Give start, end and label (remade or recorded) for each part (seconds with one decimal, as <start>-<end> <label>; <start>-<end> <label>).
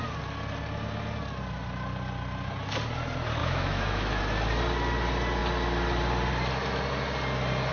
0.0-3.4 recorded; 3.4-4.2 remade; 4.2-7.7 recorded